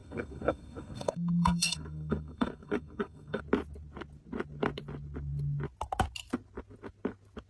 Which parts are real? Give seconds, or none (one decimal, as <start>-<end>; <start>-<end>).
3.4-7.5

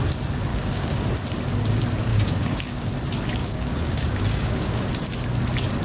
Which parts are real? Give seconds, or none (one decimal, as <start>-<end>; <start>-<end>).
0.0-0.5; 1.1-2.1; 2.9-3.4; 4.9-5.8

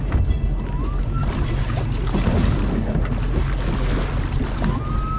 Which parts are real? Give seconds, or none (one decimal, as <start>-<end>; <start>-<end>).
0.0-5.2